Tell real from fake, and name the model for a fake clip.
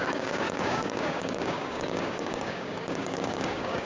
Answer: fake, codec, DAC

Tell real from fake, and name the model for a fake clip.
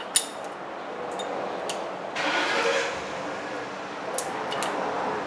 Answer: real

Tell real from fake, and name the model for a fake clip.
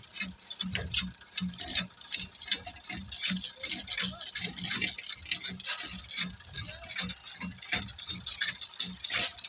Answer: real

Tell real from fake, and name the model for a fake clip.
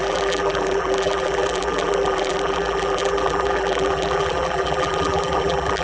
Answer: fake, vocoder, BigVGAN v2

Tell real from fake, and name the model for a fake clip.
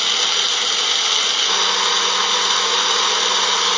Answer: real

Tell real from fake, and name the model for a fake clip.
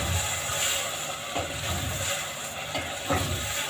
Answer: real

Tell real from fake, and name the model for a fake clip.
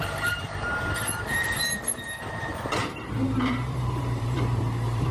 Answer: fake, vocoder, BigVGAN v2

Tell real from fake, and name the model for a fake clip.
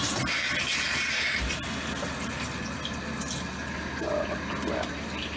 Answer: real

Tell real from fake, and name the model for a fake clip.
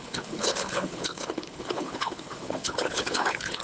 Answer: fake, codec, HILCodec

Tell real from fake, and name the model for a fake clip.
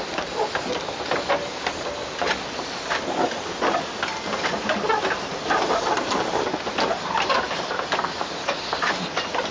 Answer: real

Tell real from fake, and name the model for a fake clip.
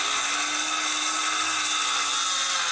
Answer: real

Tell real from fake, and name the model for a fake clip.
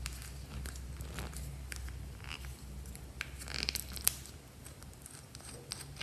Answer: real